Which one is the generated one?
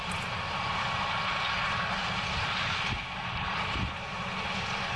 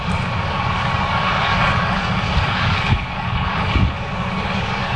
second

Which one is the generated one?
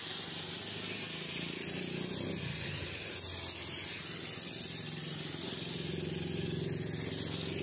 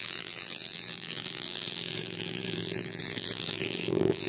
second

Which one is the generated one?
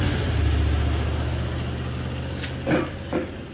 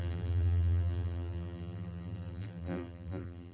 second